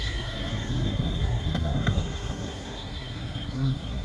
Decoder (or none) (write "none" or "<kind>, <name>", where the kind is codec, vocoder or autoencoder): codec, SNAC